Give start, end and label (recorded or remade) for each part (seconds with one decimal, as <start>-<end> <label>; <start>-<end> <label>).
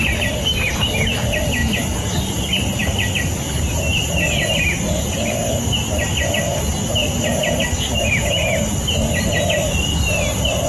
0.0-10.7 recorded